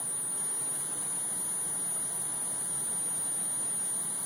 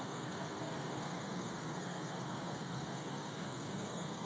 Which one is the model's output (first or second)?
second